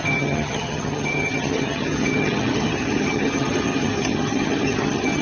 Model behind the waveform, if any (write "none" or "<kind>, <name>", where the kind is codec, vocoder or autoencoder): vocoder, HiFi-GAN